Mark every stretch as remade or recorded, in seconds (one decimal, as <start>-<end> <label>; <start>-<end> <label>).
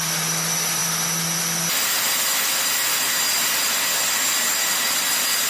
0.0-5.5 recorded